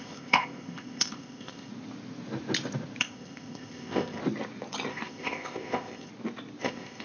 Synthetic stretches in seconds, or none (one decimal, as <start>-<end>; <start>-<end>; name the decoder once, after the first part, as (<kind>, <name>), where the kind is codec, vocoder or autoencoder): 0.0-1.7 (codec, ZipCodec); 3.0-4.2; 4.9-6.1; 6.6-7.0